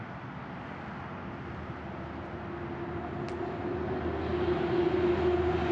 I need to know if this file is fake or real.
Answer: real